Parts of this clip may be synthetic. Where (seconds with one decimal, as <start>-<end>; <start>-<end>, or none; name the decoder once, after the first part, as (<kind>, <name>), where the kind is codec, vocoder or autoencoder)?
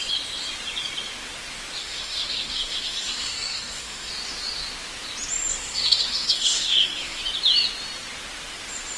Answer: 1.8-4.1 (codec, SNAC); 5.5-7.2